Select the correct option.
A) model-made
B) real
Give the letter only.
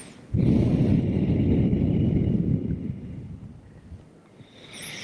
B